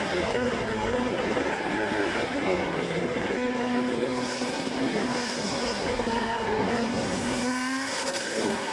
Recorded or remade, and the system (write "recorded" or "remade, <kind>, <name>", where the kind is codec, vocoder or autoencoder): remade, codec, SNAC